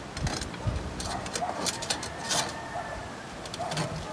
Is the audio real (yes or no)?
yes